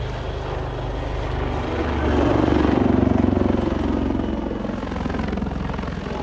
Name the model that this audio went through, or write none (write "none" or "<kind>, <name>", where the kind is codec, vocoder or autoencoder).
none